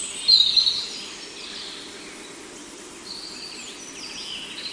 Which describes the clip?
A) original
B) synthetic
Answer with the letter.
A